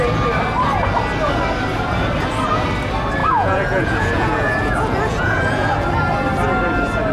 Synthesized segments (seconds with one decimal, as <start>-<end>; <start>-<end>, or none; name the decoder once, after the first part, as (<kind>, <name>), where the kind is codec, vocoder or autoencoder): 3.2-5.7 (vocoder, Vocos)